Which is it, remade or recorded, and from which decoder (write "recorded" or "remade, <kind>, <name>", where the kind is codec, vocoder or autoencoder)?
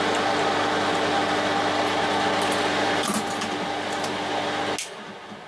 recorded